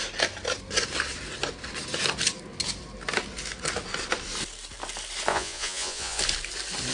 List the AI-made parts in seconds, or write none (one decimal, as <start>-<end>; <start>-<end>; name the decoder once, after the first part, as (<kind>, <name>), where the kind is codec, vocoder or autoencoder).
5.3-6.2 (vocoder, Vocos)